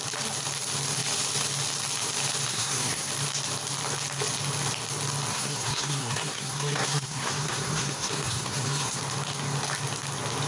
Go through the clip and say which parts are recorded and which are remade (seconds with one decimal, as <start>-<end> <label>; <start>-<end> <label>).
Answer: 0.0-2.5 recorded; 2.5-3.1 remade; 3.1-5.3 recorded; 5.3-9.0 remade; 9.0-10.5 recorded

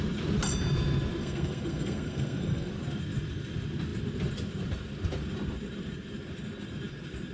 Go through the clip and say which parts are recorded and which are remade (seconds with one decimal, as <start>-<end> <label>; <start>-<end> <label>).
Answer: 0.0-1.2 recorded; 1.2-2.7 remade; 2.7-7.3 recorded